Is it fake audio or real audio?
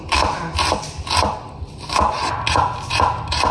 real